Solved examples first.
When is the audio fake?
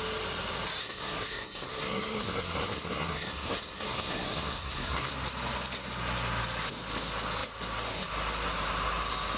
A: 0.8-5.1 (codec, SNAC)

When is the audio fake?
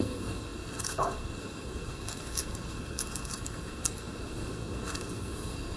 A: 0.0-5.8 (codec, SNAC)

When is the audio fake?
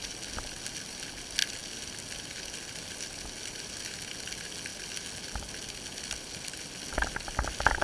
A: none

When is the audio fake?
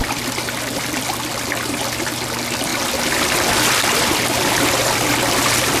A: none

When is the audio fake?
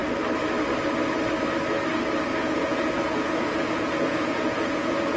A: 2.4-5.2 (vocoder, Vocos)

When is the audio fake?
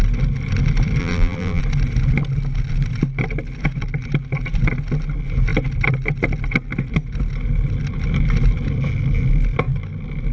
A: 1.0-1.6 (vocoder, BigVGAN v2)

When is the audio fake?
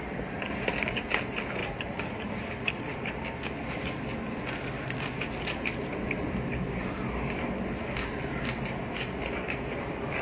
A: 1.6-2.7 (vocoder, BigVGAN v2)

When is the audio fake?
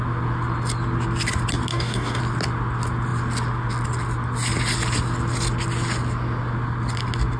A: 1.7-2.2 (codec, DAC)